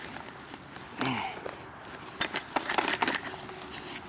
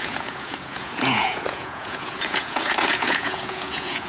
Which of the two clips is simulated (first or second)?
second